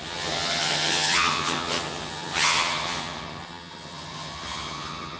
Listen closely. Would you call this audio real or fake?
fake